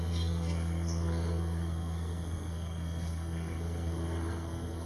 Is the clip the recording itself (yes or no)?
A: no